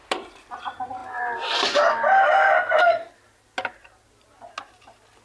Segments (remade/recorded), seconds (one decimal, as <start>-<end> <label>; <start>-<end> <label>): 0.0-5.2 recorded